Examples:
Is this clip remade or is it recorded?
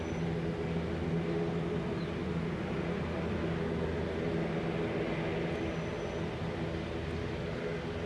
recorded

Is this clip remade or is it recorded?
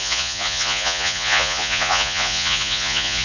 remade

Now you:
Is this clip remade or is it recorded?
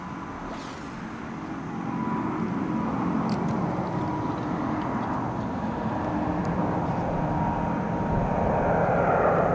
recorded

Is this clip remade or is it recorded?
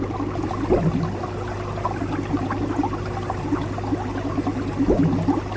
recorded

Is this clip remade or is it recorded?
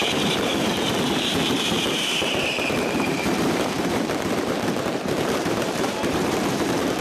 remade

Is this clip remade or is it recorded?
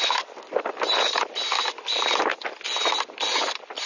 recorded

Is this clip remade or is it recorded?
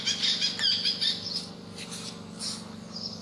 recorded